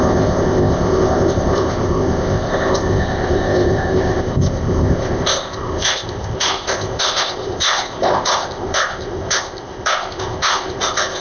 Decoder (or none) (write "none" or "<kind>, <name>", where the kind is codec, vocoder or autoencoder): codec, ZipCodec